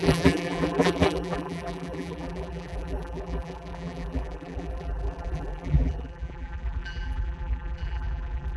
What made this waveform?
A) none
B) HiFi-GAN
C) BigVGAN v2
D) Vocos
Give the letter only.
C